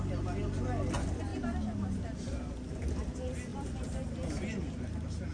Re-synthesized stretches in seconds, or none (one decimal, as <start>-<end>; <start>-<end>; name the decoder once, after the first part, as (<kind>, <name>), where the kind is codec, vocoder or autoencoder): none